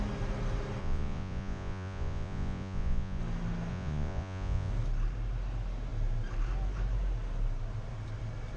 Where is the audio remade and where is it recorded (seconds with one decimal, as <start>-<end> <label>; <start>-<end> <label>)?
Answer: 0.0-0.8 recorded; 0.8-3.2 remade; 3.2-3.7 recorded; 3.7-4.7 remade; 4.7-8.6 recorded